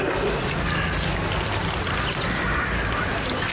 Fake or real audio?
real